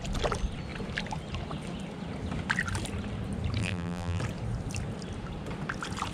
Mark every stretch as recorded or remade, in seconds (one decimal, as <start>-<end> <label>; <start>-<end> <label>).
0.0-3.6 recorded; 3.6-4.2 remade; 4.2-6.1 recorded